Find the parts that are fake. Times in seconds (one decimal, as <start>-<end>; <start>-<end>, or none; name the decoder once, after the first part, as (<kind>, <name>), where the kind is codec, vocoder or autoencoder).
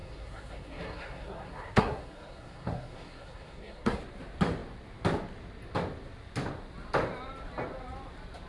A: 0.0-4.0 (codec, SNAC)